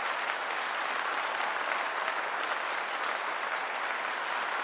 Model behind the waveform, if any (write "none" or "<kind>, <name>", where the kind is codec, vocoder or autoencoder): none